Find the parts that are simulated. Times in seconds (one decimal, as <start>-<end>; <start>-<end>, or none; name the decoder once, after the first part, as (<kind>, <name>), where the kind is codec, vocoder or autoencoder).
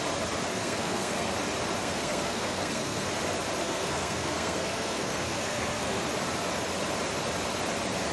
0.5-1.3 (codec, SNAC); 1.8-3.1; 3.6-6.0